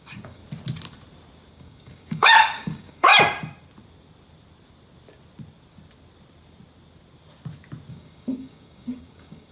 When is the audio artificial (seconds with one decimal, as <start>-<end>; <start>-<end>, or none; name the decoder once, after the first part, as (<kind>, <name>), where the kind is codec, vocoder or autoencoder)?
0.0-0.4 (codec, DAC); 1.5-3.1; 7.9-9.5